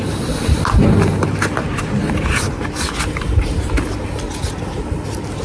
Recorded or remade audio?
recorded